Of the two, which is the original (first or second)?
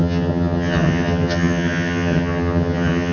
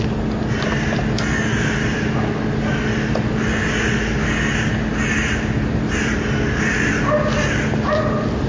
second